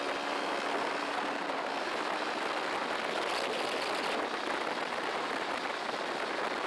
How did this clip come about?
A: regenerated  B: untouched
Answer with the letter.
B